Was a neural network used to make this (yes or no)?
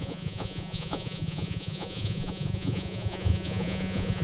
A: yes